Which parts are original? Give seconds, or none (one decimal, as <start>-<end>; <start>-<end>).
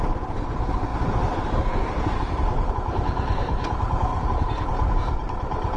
0.0-5.8